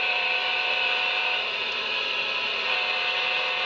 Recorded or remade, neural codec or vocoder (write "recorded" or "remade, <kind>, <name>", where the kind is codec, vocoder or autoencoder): remade, vocoder, BigVGAN v2